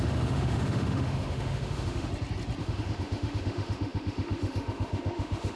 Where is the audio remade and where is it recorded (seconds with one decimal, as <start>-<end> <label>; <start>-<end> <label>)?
0.0-2.1 remade; 2.1-2.6 recorded; 2.6-5.6 remade

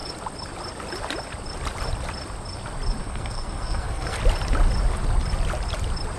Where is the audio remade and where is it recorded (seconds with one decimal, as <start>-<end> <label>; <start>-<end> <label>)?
0.0-3.0 recorded; 3.0-4.2 remade; 4.2-6.2 recorded

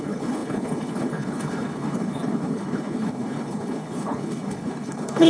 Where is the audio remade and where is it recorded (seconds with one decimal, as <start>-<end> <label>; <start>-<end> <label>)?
0.0-5.3 remade

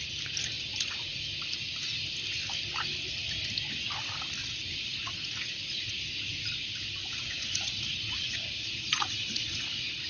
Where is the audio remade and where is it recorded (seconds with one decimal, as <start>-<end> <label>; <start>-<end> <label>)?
0.0-0.7 recorded; 0.7-1.2 remade; 1.2-4.4 recorded; 4.4-5.9 remade; 5.9-7.0 recorded; 7.0-10.1 remade

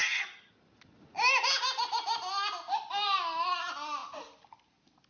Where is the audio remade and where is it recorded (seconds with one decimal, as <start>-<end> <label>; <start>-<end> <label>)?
0.0-0.5 remade; 0.5-5.1 recorded

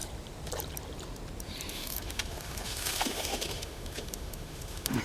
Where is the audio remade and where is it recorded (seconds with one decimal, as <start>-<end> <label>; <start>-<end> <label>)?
0.0-1.7 recorded; 1.7-5.0 remade